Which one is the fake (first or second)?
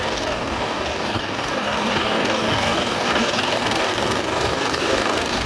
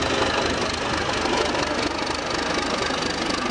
first